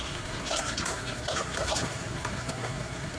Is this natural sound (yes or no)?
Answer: no